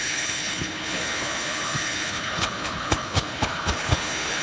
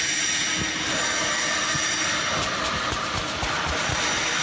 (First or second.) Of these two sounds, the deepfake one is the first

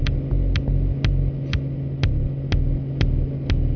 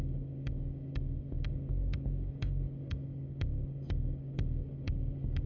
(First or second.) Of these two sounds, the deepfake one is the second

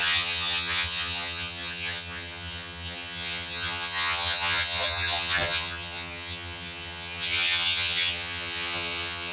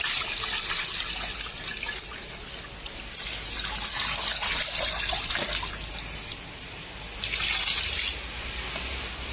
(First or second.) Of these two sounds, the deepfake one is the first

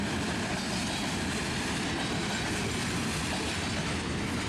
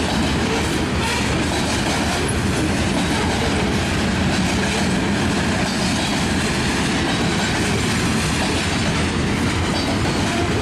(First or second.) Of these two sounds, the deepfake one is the first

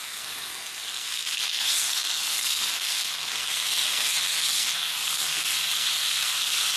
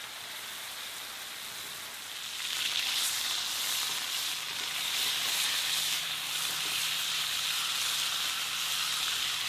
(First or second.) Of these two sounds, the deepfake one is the first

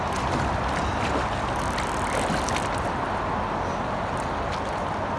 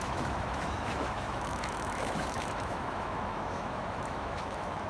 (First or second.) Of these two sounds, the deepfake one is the second